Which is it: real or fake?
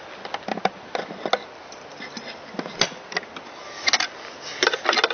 real